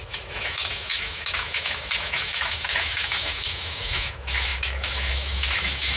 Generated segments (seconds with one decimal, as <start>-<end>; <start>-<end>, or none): 0.0-6.0